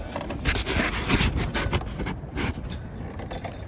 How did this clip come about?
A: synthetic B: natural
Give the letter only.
B